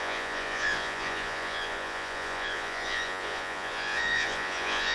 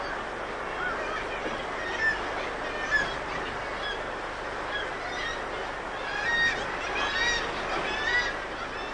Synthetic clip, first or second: first